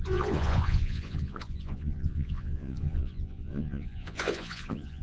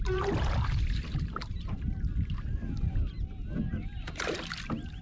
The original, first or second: second